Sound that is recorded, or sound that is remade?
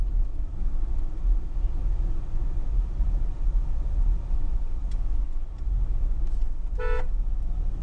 recorded